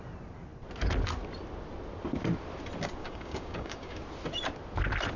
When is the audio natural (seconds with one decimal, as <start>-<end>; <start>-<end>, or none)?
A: 0.0-3.0; 4.0-5.2

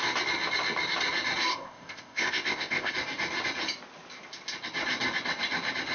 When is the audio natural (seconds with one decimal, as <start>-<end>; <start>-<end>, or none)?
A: 0.0-1.5; 2.9-5.9

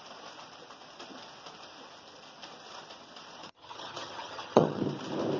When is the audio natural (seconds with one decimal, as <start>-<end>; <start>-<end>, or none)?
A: 0.0-3.4; 4.8-5.4

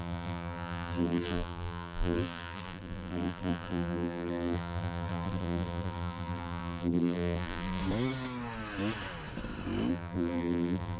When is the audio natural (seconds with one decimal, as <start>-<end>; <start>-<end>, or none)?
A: 7.8-9.9

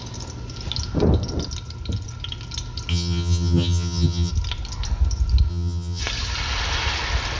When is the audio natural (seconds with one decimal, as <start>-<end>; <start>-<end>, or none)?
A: 0.0-2.9; 4.3-5.5; 6.0-7.4

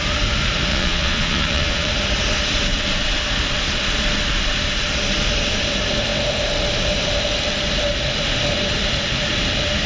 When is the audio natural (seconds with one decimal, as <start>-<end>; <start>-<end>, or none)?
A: 0.0-0.7; 1.9-9.9

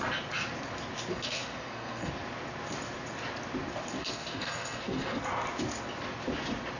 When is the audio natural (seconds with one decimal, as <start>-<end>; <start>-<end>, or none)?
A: 0.0-1.1; 2.1-4.0; 5.2-6.8

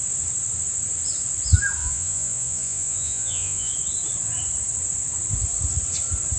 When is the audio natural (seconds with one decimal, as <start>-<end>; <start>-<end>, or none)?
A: 0.0-1.8; 3.7-6.4